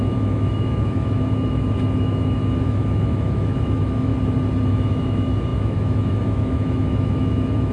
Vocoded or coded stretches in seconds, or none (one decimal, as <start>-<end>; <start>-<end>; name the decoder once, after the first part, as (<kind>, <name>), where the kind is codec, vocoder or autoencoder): 0.0-4.1 (autoencoder, DAC-VAE); 4.7-7.7